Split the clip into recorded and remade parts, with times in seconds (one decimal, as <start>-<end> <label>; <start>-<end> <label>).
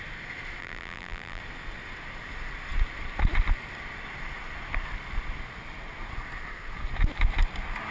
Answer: 0.0-0.6 recorded; 0.6-1.4 remade; 1.4-7.9 recorded